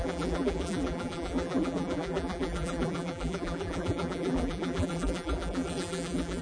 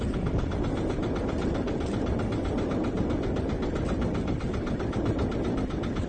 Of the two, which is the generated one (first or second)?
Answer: first